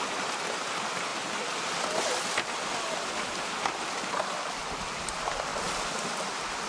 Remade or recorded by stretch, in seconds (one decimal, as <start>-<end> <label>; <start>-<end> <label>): 0.0-6.7 recorded